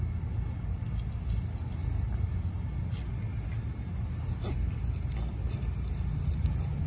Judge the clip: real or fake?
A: real